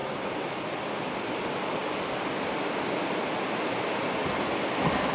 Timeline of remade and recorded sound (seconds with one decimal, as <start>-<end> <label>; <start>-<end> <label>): 0.0-5.1 recorded